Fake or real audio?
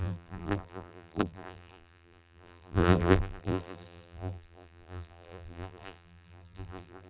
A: fake